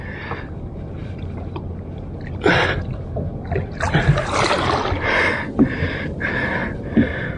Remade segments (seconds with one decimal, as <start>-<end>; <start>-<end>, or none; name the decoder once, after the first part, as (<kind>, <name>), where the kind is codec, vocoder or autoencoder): 0.0-1.0 (vocoder, BigVGAN v2); 5.4-7.4